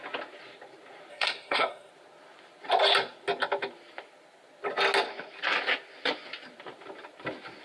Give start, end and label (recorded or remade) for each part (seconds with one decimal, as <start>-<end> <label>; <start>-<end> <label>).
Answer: 0.0-1.1 recorded; 1.1-1.9 remade; 1.9-7.6 recorded